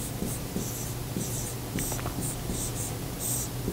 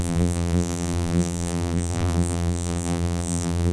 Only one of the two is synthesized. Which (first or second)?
second